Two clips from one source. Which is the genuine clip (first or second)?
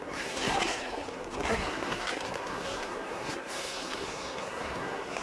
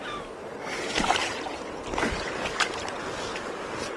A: second